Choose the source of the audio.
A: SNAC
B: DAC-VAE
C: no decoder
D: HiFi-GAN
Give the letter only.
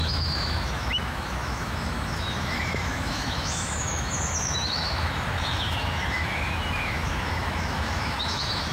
B